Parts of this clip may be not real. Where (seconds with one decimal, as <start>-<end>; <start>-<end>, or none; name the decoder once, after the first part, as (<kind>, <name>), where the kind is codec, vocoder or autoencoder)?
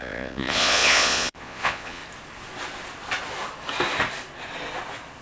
0.0-2.0 (vocoder, Vocos)